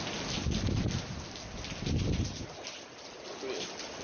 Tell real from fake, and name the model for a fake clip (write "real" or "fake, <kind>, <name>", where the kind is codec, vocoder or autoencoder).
real